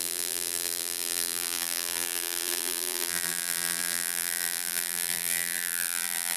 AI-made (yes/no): yes